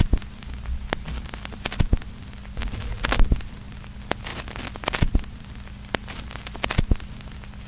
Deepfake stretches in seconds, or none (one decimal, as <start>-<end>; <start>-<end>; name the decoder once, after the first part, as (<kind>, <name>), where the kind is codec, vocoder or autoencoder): none